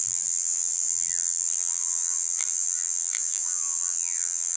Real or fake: fake